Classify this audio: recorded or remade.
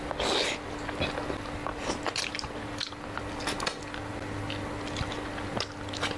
recorded